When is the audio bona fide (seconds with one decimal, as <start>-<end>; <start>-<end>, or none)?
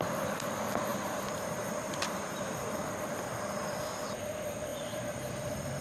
0.0-0.9; 2.7-4.7